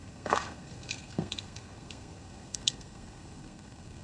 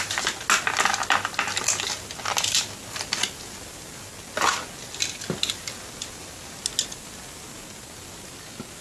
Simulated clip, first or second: first